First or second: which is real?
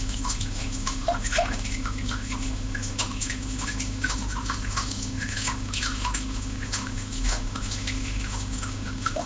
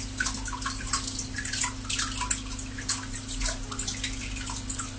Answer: second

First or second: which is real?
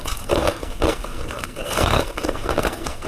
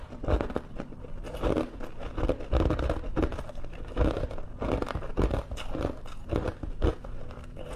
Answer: second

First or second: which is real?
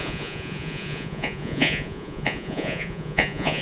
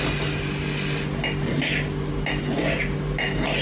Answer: second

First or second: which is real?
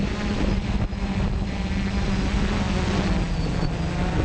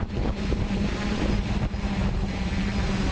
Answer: first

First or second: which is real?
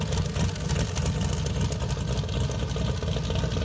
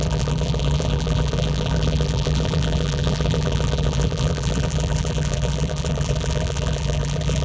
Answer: first